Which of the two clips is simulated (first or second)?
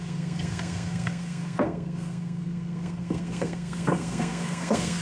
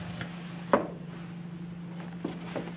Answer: first